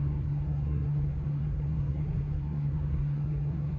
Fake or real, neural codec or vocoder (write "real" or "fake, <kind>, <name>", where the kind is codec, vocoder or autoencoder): fake, codec, SNAC